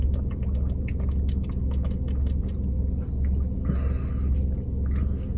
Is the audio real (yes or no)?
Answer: yes